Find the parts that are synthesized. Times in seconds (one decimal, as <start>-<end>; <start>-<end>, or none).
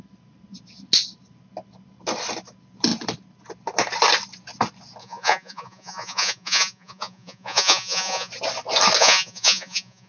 5.0-8.3; 9.0-10.1